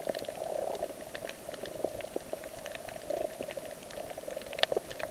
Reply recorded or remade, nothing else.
remade